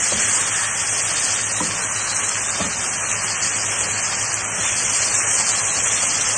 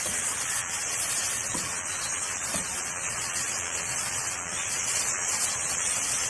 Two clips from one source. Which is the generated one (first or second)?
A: second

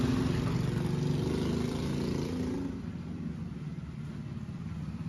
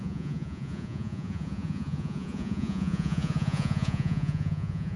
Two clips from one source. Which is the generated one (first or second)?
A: second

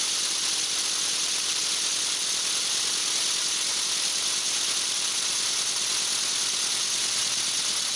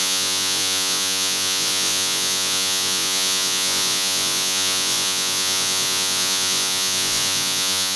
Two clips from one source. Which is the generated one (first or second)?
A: second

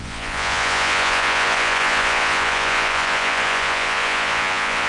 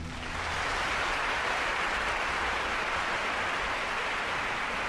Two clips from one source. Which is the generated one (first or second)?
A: first